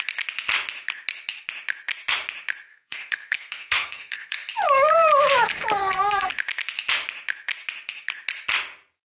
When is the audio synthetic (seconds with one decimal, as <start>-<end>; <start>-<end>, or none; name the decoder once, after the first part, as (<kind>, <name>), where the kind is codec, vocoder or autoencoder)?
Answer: 2.7-4.5 (codec, SNAC); 5.8-6.3